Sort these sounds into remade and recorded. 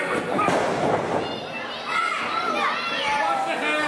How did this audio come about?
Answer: recorded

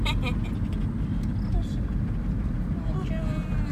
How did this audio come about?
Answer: recorded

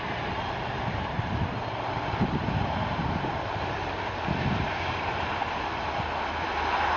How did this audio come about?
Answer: remade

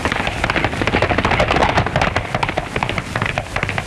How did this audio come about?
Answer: recorded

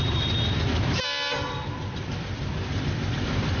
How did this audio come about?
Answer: recorded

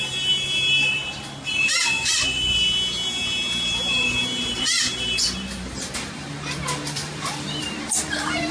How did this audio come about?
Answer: remade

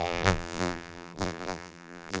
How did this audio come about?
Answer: remade